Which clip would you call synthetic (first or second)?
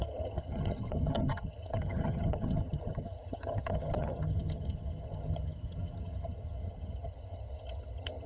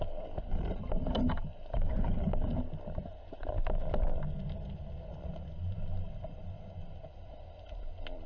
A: first